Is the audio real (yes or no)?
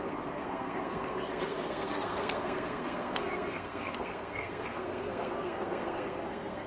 no